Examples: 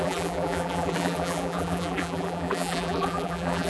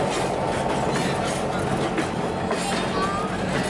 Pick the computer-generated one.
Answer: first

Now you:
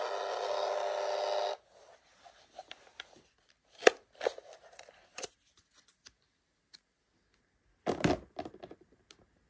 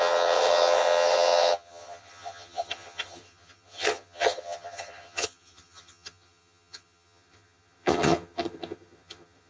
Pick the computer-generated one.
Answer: second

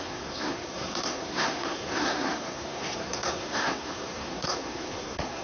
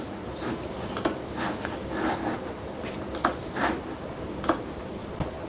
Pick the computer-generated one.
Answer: first